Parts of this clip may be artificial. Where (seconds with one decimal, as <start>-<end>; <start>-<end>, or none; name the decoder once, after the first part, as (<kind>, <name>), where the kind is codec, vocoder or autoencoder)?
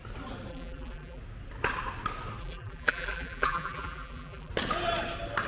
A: 0.5-1.2 (vocoder, BigVGAN v2); 2.4-4.5